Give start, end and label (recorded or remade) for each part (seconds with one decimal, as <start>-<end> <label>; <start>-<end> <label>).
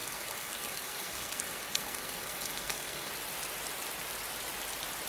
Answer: 0.0-3.1 remade; 3.1-5.1 recorded